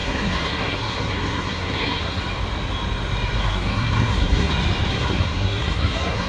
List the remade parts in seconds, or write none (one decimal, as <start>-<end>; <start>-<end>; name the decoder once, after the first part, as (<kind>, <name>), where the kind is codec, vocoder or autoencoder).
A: 0.0-2.2 (codec, SNAC); 3.4-4.5; 4.9-6.3